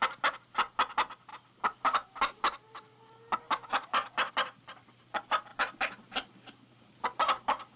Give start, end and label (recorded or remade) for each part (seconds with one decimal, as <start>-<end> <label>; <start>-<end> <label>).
0.0-7.8 recorded